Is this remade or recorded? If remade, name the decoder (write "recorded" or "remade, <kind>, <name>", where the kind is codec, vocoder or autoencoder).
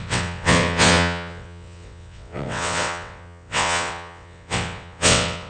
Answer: remade, vocoder, WaveNeXt